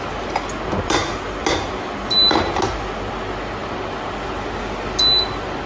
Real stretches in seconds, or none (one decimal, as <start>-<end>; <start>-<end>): 0.0-5.7